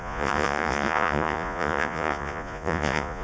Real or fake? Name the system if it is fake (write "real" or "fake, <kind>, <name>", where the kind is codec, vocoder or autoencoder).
fake, vocoder, Vocos